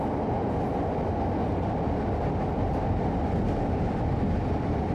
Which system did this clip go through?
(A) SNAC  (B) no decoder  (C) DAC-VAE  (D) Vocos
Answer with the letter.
B